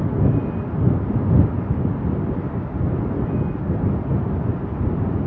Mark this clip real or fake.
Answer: real